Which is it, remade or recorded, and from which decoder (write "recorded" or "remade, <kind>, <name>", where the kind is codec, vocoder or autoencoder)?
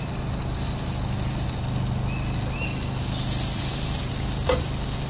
recorded